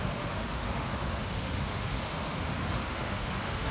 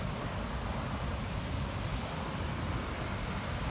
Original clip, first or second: second